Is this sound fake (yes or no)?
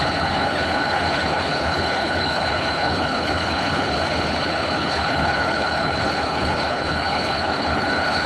yes